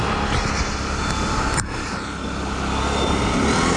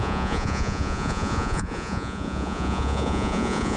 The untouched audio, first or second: first